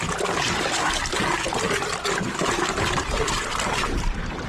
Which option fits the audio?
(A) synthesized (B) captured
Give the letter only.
B